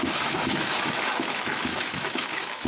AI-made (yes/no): yes